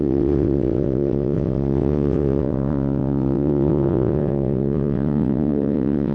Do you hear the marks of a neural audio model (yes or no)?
yes